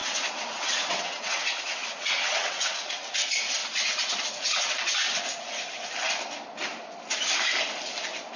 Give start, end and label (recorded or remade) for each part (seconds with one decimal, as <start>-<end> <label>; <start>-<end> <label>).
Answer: 0.0-3.1 remade; 3.1-8.4 recorded